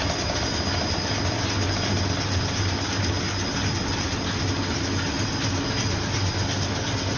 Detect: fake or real real